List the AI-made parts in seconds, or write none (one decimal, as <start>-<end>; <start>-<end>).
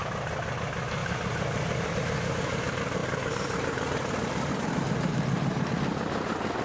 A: 1.0-1.9; 3.0-5.7